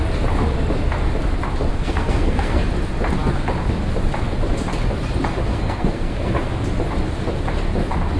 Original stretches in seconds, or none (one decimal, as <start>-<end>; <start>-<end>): 0.0-1.7; 2.6-5.5; 6.5-8.2